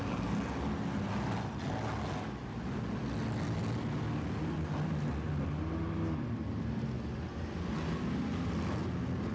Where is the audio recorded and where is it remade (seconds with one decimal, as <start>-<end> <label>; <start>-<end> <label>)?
0.0-9.3 recorded